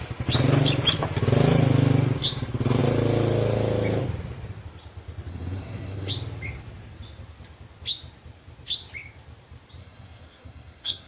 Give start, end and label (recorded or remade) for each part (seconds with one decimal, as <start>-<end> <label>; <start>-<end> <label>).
0.0-5.3 recorded; 5.3-6.1 remade; 6.1-9.8 recorded; 9.8-11.1 remade